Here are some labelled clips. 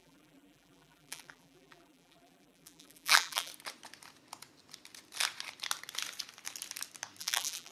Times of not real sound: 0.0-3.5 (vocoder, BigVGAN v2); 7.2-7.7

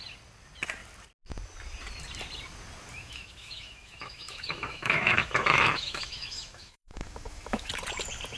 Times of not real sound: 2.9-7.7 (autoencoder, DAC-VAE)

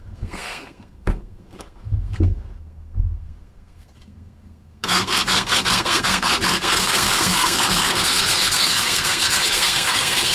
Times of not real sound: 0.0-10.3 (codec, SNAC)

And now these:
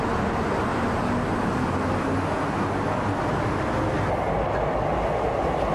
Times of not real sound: none